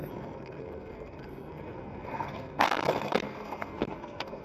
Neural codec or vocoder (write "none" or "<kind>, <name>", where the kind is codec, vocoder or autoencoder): codec, SNAC